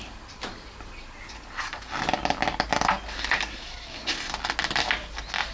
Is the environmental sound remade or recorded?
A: recorded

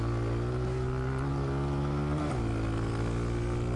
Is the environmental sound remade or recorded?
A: recorded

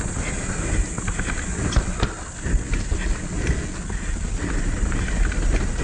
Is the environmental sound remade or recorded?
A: recorded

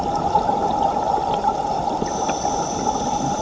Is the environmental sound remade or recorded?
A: recorded